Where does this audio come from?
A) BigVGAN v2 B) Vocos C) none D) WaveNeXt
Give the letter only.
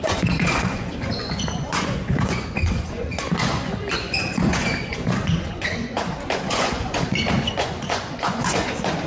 B